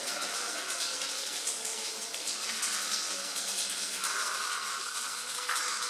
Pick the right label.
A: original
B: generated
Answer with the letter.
B